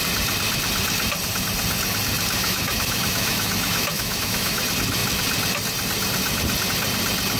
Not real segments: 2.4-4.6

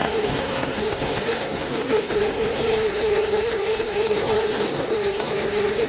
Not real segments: 0.0-5.9

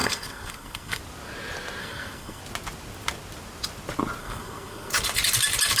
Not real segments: 0.0-1.0; 1.8-2.4; 4.2-4.9

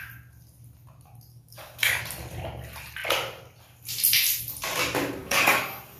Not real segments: 1.3-2.0; 5.2-6.0

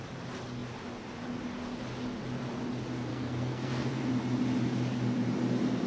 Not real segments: 3.1-4.1

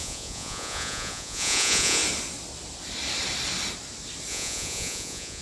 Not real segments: 0.0-2.0; 4.3-5.4